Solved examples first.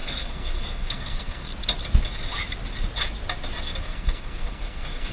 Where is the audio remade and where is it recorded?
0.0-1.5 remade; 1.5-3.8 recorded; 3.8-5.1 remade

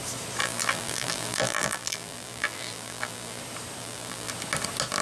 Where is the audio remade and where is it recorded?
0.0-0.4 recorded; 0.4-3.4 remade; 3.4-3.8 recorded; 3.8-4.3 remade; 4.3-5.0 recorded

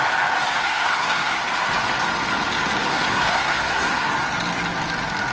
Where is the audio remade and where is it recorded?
0.0-0.6 recorded; 0.6-1.4 remade; 1.4-2.9 recorded; 2.9-4.1 remade; 4.1-5.3 recorded